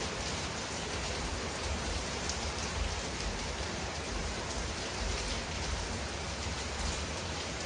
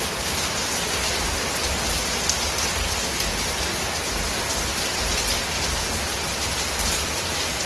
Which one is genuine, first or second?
second